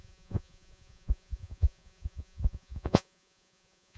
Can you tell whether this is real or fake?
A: fake